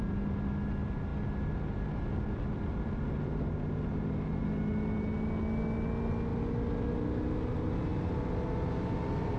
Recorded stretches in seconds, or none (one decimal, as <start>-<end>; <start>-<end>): 0.0-9.4